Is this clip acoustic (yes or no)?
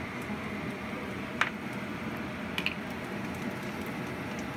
yes